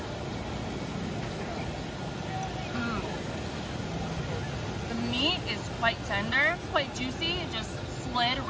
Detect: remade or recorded recorded